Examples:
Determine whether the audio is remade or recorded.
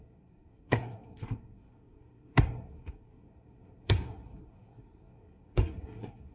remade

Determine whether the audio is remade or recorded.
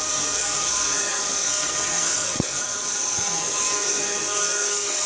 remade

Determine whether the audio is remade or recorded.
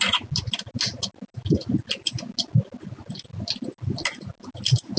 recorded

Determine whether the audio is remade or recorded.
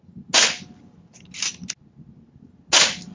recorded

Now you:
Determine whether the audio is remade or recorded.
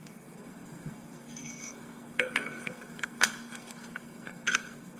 remade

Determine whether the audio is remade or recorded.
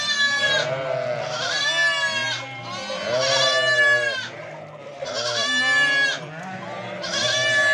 recorded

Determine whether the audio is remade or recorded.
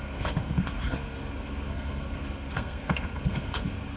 remade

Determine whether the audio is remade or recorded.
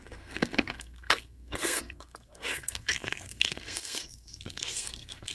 remade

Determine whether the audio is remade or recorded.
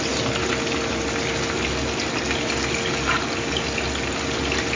recorded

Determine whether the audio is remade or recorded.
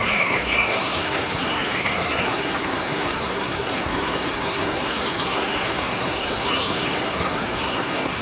remade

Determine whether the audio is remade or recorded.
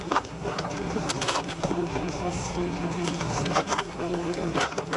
remade